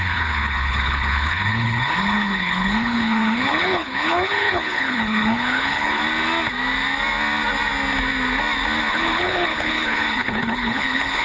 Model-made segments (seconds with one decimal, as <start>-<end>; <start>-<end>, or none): 0.0-6.0; 8.9-11.2